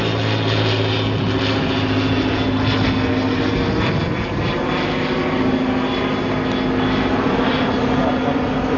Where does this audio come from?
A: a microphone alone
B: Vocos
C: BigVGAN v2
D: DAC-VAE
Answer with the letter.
A